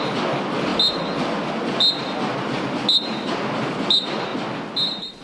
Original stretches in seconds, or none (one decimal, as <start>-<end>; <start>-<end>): 0.0-5.2